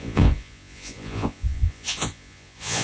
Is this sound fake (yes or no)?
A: yes